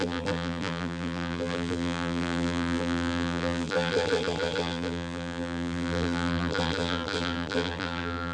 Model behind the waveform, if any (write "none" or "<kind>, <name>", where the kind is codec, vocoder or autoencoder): vocoder, BigVGAN v2